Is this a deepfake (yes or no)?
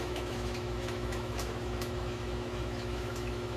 yes